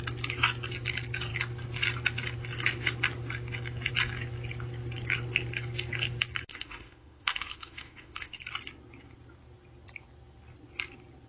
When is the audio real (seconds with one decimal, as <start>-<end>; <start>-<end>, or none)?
0.0-6.5; 8.4-11.3

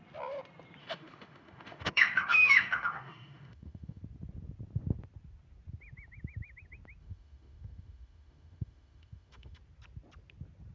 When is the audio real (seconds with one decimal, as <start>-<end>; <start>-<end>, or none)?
0.0-0.8; 4.0-7.0; 9.6-10.7

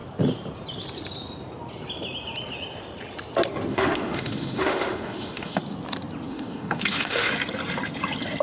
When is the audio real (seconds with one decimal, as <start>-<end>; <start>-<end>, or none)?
0.0-3.7; 5.6-6.3; 7.3-8.4

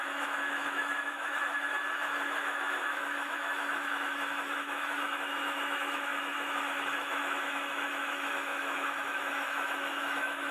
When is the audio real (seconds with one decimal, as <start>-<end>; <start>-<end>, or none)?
none

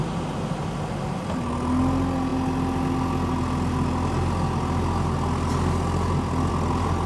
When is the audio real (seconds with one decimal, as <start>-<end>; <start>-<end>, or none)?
0.0-7.1

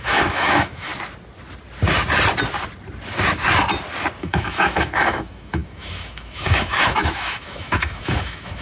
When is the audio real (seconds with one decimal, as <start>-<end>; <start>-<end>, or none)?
0.9-4.2

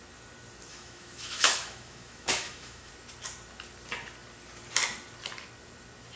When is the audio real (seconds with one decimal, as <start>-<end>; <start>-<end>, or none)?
0.0-0.7; 2.9-6.2

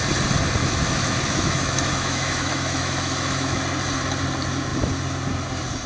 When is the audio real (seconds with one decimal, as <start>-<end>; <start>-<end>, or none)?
0.0-0.6; 3.6-5.9